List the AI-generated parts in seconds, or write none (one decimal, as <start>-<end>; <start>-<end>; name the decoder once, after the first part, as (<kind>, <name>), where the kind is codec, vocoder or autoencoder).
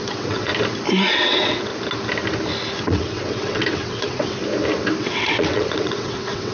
0.0-0.5 (vocoder, WaveNeXt); 1.1-1.7; 2.8-4.4; 5.0-6.5